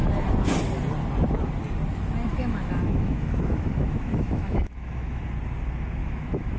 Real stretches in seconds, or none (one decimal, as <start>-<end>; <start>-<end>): 0.0-2.3; 5.2-6.0